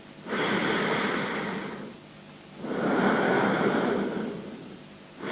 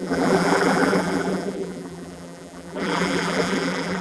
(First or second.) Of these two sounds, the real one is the first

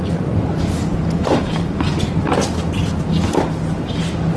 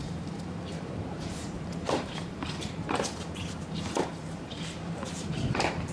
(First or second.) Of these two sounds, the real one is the first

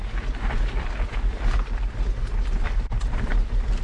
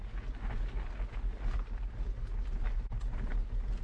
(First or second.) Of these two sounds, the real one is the second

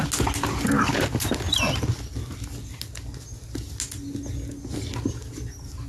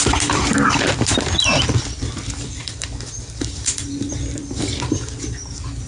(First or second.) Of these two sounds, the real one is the first